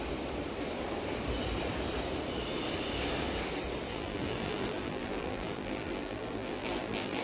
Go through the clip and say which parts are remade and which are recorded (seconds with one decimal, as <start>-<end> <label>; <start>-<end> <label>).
0.0-3.9 recorded; 3.9-7.2 remade